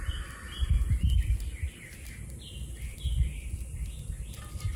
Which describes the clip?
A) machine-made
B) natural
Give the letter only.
B